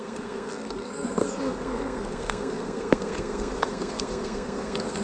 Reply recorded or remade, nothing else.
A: remade